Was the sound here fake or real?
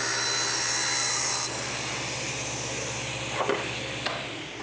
real